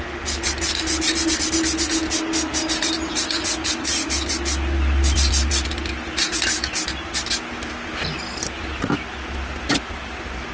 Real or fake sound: real